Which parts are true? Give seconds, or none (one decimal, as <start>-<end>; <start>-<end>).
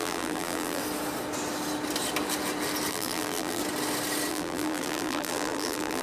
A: 0.8-2.9; 3.6-4.3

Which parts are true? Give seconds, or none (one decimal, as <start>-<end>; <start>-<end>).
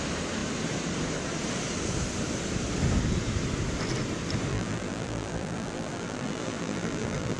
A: 0.0-4.5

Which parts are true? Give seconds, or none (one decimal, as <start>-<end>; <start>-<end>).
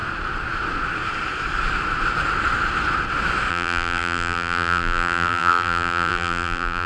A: 0.0-3.5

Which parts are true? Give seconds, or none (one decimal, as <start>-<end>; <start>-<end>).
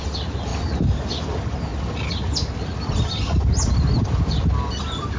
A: 0.0-5.2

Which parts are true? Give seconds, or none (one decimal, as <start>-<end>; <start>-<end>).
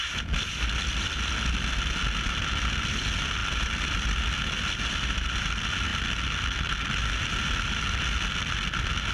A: 0.0-9.1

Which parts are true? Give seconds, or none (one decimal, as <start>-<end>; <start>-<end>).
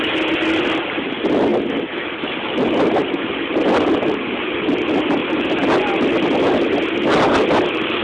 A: 0.0-8.0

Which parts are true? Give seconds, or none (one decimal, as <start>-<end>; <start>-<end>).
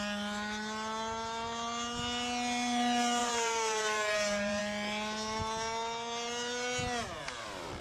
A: 0.0-3.2; 4.6-7.8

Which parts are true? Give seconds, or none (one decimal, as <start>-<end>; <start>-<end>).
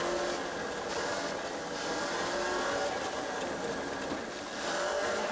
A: 0.0-5.3